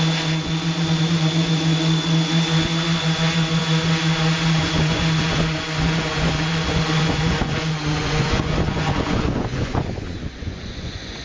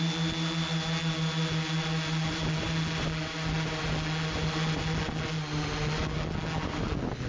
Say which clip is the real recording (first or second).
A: second